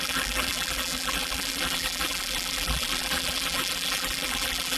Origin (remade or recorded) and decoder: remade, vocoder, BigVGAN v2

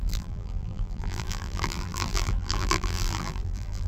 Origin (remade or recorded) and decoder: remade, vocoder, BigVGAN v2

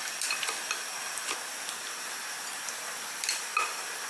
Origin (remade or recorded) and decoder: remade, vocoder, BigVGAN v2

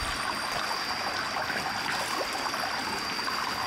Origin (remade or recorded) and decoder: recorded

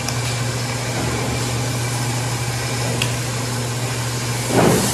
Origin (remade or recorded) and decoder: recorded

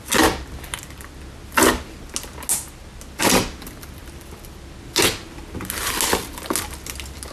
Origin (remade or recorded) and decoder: recorded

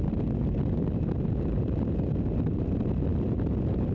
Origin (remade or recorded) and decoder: recorded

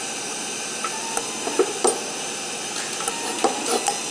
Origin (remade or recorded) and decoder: recorded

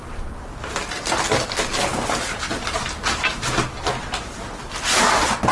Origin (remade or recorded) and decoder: recorded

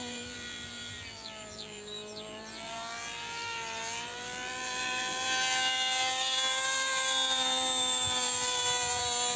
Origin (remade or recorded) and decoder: remade, vocoder, BigVGAN v2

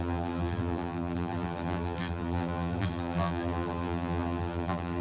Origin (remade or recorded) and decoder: remade, vocoder, BigVGAN v2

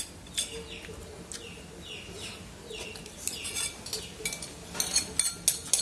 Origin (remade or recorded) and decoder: recorded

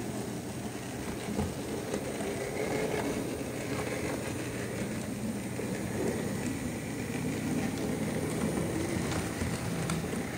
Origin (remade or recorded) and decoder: recorded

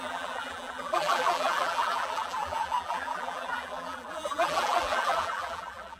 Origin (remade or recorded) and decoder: remade, vocoder, BigVGAN v2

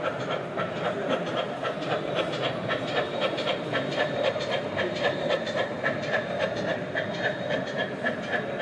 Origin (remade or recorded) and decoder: remade, vocoder, BigVGAN v2